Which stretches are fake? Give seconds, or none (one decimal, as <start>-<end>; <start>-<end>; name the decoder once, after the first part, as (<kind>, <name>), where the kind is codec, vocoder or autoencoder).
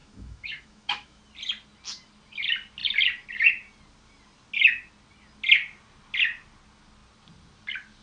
0.0-1.2 (autoencoder, DAC-VAE)